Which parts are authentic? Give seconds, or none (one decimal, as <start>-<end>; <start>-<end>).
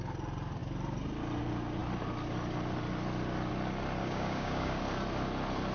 0.0-4.0; 4.8-5.7